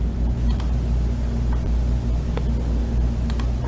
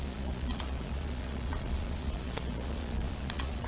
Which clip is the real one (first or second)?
first